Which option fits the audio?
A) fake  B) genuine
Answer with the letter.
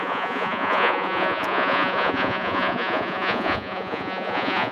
A